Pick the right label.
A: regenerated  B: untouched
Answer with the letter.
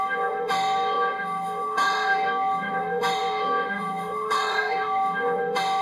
A